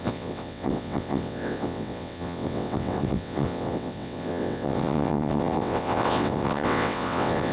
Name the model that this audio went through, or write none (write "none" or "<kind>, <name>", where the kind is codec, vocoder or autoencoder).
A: vocoder, WaveNeXt